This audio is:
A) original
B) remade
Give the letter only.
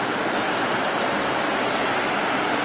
A